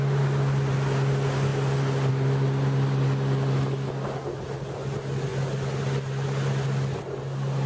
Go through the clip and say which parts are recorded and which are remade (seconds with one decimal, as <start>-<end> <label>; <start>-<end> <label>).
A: 0.0-7.7 recorded